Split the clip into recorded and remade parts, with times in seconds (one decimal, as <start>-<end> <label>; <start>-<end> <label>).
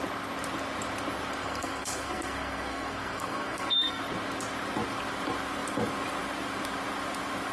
0.0-1.4 recorded; 1.4-4.0 remade; 4.0-7.5 recorded